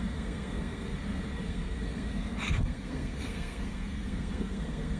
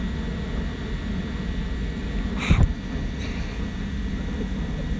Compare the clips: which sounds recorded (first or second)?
second